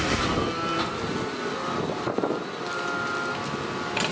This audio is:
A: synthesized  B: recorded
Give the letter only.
B